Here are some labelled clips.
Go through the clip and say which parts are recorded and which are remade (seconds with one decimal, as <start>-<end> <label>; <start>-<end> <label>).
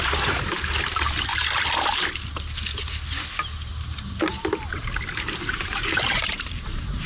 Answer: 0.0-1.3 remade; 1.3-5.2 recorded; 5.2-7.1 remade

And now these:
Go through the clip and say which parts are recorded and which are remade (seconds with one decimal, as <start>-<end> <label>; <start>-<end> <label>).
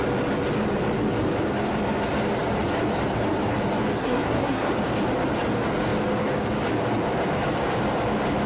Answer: 0.0-4.0 recorded; 4.0-4.7 remade; 4.7-8.5 recorded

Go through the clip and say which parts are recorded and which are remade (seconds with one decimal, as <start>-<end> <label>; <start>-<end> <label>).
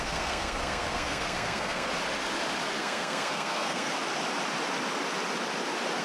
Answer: 0.0-1.9 remade; 1.9-2.8 recorded; 2.8-3.9 remade; 3.9-6.0 recorded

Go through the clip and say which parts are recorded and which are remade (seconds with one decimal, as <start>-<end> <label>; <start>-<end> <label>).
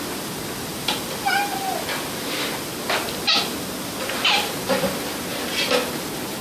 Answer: 0.0-6.4 recorded